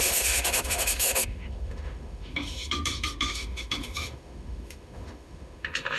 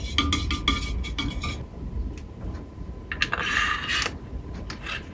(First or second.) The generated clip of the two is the first